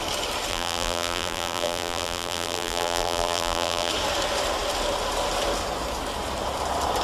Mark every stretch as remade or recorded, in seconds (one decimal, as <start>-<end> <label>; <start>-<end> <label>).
0.0-0.5 recorded; 0.5-3.9 remade; 3.9-7.0 recorded